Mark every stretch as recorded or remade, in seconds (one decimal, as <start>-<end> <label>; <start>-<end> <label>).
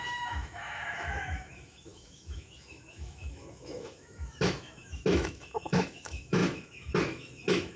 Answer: 0.0-7.8 remade